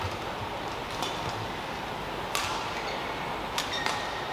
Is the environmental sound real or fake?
real